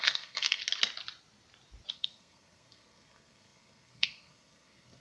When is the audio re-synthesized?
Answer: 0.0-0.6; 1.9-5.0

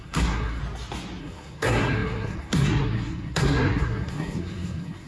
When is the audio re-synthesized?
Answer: 0.0-0.6; 1.2-5.1

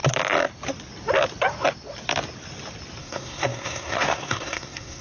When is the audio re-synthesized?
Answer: 3.0-5.0

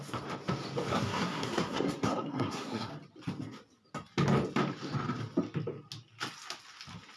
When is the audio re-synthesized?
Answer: 0.9-2.9

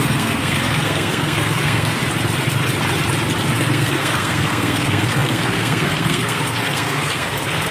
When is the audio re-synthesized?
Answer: 0.0-2.0; 3.6-7.7

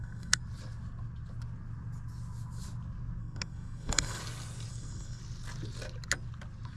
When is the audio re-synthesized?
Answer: 0.0-0.4; 3.2-4.2; 4.7-5.2